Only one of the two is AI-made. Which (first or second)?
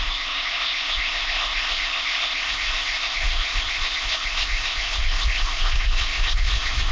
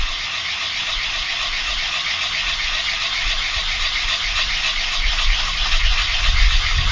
first